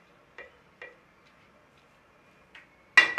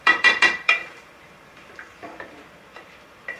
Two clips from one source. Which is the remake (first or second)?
second